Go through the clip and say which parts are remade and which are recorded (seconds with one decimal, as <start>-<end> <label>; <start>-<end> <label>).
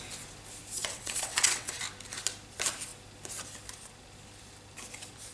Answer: 0.0-0.8 recorded; 0.8-1.8 remade; 1.8-5.3 recorded